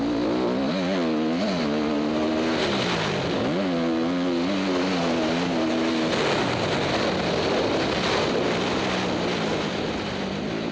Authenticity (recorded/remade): recorded